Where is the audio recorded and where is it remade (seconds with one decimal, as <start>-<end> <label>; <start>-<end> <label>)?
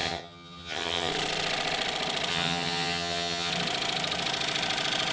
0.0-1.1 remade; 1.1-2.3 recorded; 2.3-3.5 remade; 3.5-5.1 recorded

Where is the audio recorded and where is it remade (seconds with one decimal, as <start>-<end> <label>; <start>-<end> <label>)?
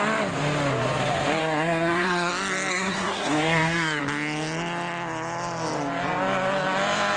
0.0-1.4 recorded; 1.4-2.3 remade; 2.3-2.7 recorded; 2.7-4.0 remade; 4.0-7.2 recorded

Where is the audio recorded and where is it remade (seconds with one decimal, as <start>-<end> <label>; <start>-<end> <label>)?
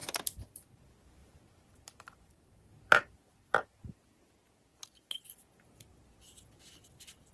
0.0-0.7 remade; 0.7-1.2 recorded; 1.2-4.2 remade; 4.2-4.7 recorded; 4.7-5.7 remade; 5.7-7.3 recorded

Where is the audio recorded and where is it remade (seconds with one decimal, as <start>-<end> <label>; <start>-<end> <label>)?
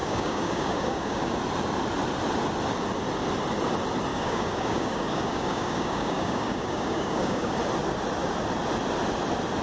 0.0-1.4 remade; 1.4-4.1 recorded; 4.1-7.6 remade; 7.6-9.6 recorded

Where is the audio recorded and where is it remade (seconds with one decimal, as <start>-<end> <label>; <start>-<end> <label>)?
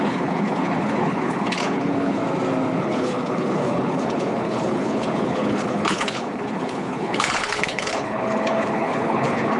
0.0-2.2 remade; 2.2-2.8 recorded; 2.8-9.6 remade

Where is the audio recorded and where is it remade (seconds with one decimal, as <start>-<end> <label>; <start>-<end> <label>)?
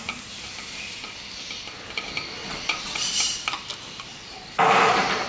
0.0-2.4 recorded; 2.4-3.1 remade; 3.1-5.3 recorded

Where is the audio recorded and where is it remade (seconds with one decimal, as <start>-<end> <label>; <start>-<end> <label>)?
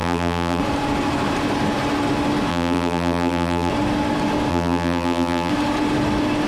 0.0-0.6 remade; 0.6-2.5 recorded; 2.5-3.7 remade; 3.7-4.5 recorded; 4.5-5.5 remade; 5.5-6.5 recorded